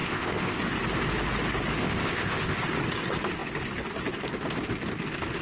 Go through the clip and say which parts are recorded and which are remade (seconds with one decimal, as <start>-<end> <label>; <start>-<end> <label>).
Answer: 0.0-0.6 remade; 0.6-1.8 recorded; 1.8-2.6 remade; 2.6-5.4 recorded